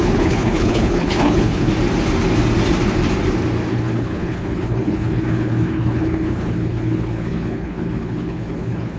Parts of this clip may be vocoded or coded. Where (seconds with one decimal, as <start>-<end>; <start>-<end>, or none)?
0.0-1.7; 3.7-9.0